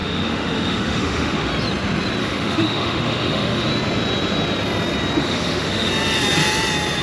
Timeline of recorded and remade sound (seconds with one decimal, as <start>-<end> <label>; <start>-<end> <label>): 0.0-1.5 remade; 1.5-2.2 recorded; 2.2-3.7 remade; 3.7-5.2 recorded; 5.2-5.9 remade; 5.9-7.0 recorded